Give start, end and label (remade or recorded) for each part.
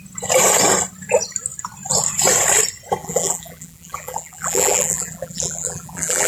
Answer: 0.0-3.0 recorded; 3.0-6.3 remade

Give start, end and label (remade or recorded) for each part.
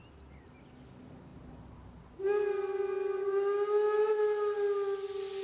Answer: 0.0-5.4 recorded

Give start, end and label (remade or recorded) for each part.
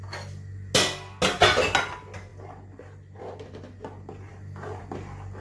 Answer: 0.0-5.4 recorded